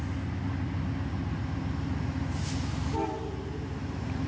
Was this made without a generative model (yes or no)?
yes